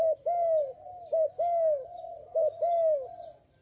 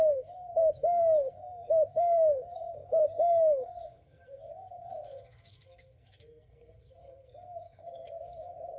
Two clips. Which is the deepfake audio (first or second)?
second